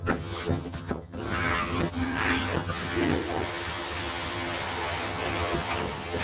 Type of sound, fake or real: fake